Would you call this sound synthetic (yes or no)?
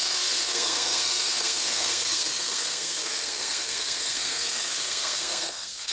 yes